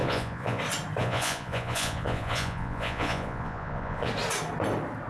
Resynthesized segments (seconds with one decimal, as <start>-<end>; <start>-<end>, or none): 0.0-0.6; 1.0-4.1